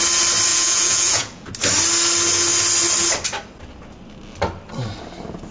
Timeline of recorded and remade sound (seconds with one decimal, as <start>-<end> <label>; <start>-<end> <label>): 0.0-0.5 recorded; 0.5-1.5 remade; 1.5-5.5 recorded